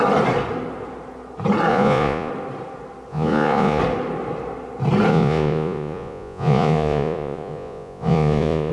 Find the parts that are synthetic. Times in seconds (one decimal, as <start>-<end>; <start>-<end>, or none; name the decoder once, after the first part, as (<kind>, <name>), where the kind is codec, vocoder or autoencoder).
1.7-2.3 (vocoder, Vocos); 3.1-3.8; 5.1-8.7